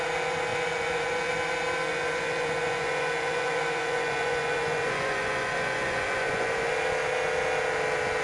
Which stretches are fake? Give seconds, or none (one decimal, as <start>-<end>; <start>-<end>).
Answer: 0.5-1.3; 1.9-6.7